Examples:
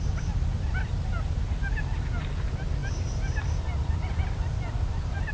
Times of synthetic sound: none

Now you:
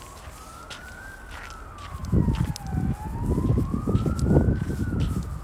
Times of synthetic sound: none

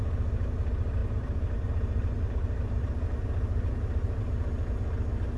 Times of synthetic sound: 1.0-4.2 (vocoder, BigVGAN v2)

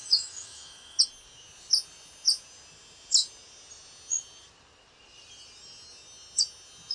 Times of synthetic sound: 0.0-1.0 (autoencoder, DAC-VAE)

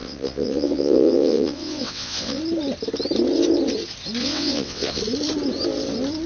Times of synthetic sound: 0.0-2.4 (vocoder, WaveNeXt); 4.2-5.0